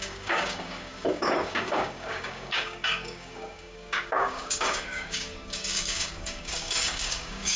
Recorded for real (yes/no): no